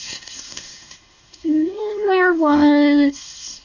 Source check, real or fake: fake